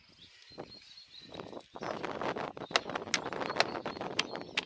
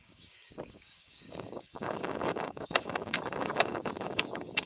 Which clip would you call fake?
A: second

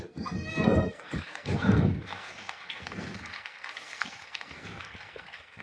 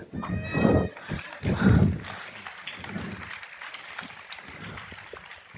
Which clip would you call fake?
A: first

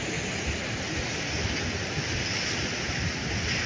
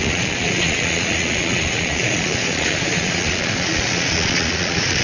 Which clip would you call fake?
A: second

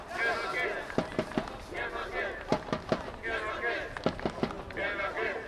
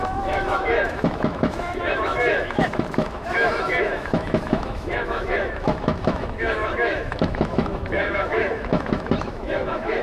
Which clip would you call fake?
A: second